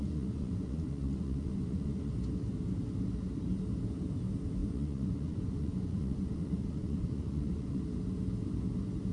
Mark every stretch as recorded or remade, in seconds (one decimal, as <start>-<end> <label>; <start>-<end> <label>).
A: 0.0-2.1 remade; 2.1-4.6 recorded; 4.6-7.8 remade; 7.8-9.1 recorded